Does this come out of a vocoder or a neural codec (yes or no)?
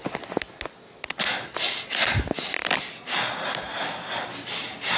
no